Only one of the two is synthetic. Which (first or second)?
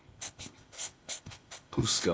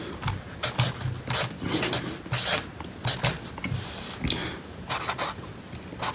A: first